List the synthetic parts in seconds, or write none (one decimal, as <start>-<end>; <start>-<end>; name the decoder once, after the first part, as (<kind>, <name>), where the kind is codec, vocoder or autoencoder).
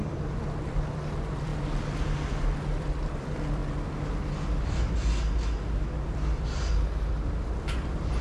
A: 0.0-3.6 (vocoder, BigVGAN v2); 6.4-8.2